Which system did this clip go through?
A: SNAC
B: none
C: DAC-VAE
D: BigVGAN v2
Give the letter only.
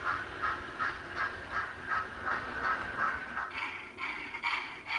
B